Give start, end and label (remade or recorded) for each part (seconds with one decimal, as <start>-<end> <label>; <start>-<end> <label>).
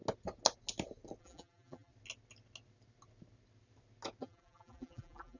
0.0-1.2 recorded; 1.2-1.9 remade; 1.9-4.2 recorded; 4.2-5.4 remade